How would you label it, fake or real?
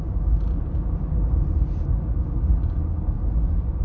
real